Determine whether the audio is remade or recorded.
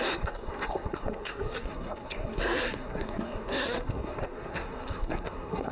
remade